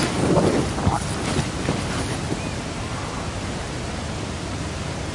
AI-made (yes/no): no